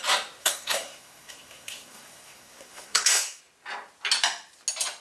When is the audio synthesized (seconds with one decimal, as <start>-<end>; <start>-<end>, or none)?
0.4-3.4